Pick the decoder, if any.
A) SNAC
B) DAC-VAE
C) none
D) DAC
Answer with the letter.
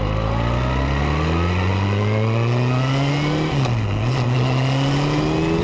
C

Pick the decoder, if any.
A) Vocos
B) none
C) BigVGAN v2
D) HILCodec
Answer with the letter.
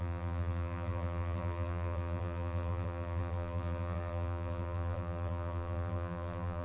C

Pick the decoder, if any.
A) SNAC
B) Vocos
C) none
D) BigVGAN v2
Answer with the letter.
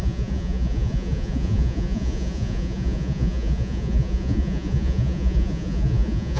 B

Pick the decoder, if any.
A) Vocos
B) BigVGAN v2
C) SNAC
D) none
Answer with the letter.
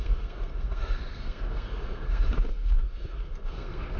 C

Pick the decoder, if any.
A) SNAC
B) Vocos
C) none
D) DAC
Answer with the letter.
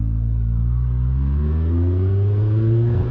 A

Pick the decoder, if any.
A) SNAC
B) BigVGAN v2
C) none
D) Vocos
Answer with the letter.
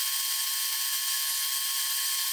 C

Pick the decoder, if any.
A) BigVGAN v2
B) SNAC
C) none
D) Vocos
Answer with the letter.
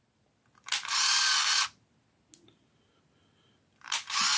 C